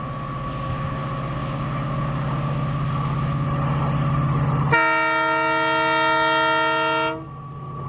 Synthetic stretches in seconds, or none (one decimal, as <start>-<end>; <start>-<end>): none